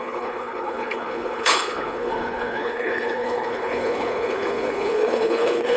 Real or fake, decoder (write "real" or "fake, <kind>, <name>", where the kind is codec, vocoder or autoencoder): fake, codec, HILCodec